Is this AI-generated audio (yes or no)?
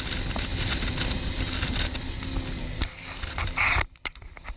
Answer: no